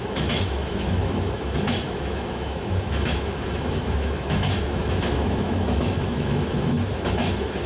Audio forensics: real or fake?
fake